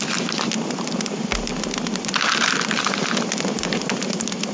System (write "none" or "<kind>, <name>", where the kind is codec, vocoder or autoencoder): none